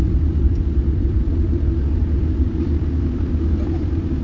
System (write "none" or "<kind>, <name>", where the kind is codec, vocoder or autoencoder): vocoder, BigVGAN v2